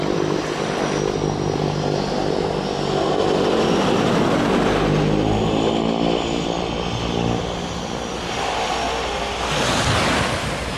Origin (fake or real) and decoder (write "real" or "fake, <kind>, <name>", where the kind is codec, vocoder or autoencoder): real